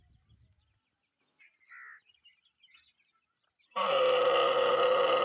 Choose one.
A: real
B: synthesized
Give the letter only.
A